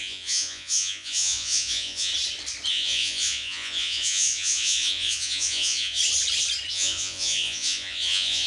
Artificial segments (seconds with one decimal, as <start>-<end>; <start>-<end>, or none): 0.0-2.1; 2.7-6.0; 6.7-8.5